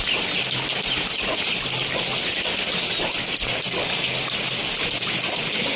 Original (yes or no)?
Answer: yes